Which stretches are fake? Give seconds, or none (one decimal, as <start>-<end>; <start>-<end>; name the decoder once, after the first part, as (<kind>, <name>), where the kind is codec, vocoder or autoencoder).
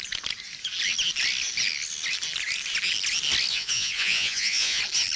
3.5-4.8 (vocoder, Vocos)